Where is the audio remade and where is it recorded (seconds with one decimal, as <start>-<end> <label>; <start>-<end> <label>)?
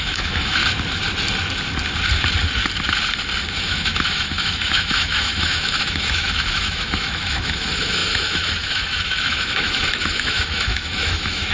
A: 0.0-0.6 remade; 0.6-3.6 recorded; 3.6-11.5 remade